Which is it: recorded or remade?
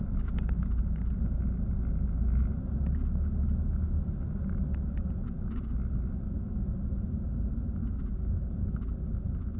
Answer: recorded